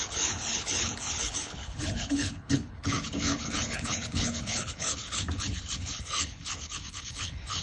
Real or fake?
fake